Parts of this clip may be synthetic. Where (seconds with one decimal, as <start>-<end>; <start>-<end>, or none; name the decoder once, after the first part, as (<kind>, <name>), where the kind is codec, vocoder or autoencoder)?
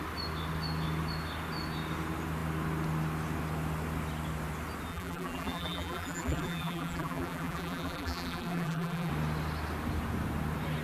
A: 4.9-9.1 (vocoder, BigVGAN v2)